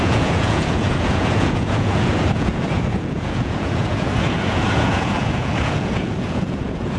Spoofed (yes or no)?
yes